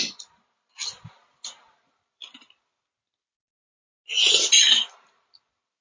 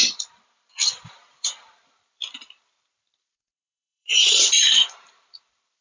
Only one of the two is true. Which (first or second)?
first